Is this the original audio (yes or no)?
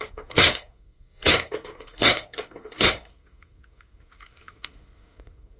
no